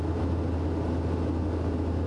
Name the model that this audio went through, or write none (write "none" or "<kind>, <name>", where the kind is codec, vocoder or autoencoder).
none